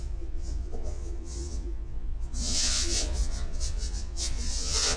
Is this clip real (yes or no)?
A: no